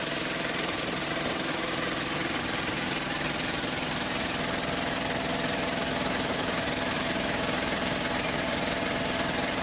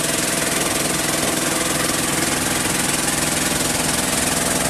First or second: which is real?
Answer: second